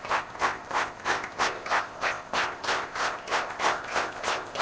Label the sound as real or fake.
fake